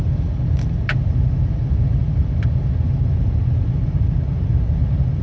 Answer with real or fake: real